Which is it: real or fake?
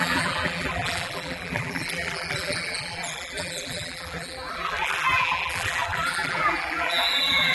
fake